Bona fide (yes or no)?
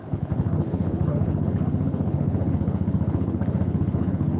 no